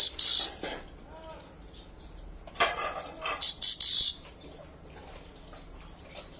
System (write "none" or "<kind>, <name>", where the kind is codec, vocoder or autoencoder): none